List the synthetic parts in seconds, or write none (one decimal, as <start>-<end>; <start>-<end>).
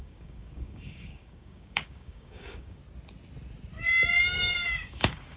0.0-2.8; 4.2-5.4